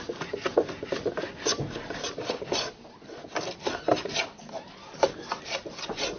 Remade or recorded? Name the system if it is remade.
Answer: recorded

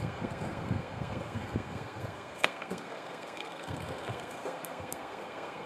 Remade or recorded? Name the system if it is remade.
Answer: remade, codec, SNAC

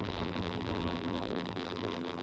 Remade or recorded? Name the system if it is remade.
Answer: remade, vocoder, BigVGAN v2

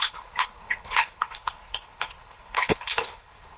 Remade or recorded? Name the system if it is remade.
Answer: remade, codec, HILCodec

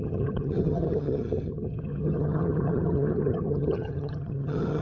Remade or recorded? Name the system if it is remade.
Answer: remade, vocoder, HiFi-GAN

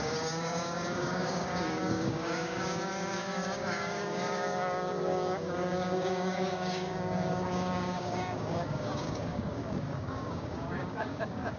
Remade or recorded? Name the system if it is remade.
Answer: remade, codec, DAC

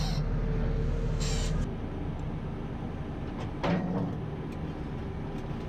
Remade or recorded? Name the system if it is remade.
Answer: recorded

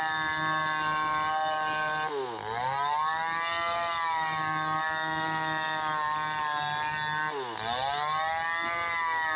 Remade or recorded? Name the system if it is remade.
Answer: recorded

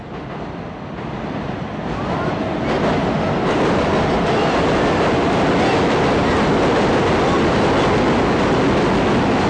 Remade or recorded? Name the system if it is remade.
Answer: recorded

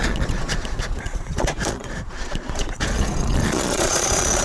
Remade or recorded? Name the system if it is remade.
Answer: remade, vocoder, Vocos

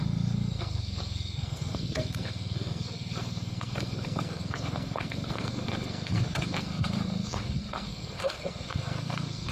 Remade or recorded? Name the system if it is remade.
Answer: remade, codec, SNAC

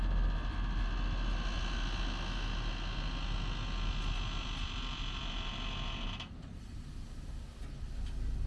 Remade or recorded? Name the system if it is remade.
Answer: recorded